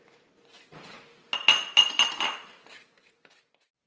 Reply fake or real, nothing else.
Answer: real